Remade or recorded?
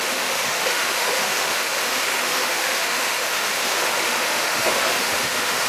remade